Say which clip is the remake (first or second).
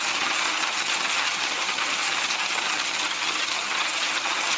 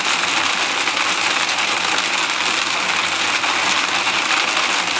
first